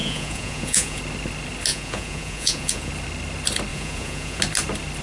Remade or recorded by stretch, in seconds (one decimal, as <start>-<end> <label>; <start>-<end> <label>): 0.0-1.0 remade; 1.0-1.7 recorded; 1.7-2.9 remade; 2.9-3.7 recorded; 3.7-4.4 remade; 4.4-5.0 recorded